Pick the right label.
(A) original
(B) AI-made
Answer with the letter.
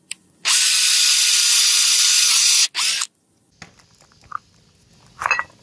A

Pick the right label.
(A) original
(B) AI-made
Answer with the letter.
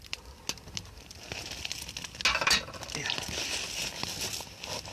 A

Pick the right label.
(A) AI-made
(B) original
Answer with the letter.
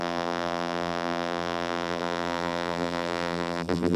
A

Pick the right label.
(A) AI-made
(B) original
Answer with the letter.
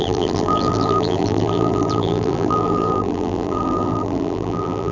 A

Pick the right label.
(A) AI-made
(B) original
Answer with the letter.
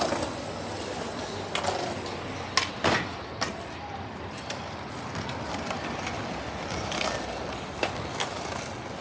B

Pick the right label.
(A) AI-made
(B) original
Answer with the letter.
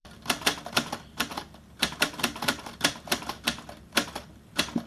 A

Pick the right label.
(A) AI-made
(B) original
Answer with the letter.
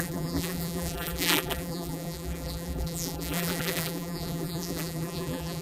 A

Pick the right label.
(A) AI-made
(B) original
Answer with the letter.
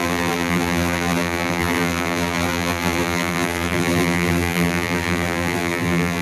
A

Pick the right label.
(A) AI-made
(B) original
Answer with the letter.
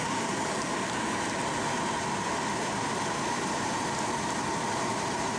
B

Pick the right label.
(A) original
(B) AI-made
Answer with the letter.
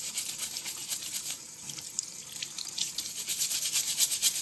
B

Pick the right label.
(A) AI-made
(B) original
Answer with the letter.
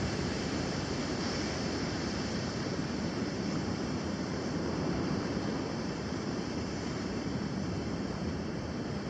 A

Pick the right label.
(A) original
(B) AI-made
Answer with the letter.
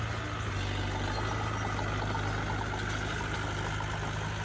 A